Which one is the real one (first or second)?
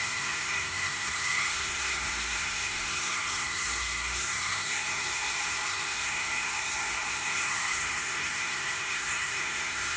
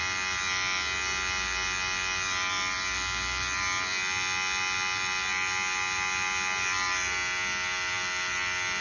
second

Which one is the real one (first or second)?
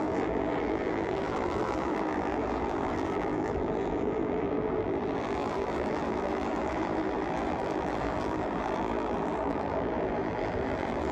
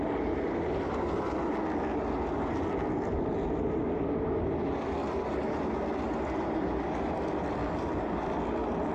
second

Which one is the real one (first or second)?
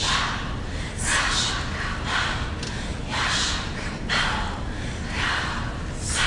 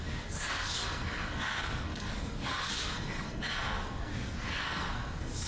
first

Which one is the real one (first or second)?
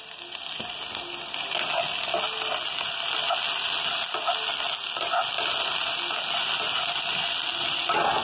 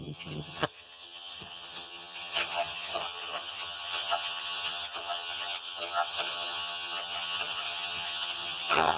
first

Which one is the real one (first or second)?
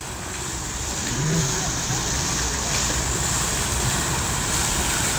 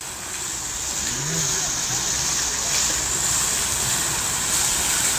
second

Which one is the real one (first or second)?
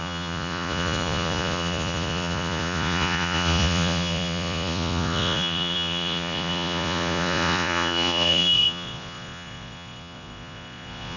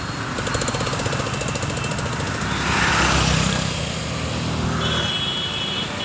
second